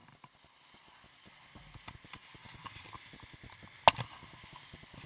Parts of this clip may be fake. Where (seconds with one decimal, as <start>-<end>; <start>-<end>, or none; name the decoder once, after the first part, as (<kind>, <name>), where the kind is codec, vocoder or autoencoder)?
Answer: none